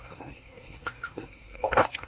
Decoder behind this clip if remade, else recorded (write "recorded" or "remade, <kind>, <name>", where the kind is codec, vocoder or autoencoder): remade, codec, SNAC